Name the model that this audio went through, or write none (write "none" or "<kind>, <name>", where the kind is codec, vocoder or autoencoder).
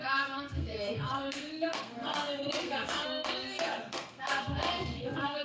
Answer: codec, SNAC